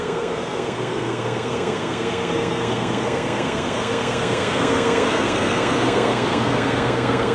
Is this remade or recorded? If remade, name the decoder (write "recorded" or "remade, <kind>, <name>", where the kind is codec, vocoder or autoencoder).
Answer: remade, codec, SNAC